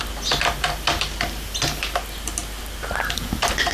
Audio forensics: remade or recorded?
recorded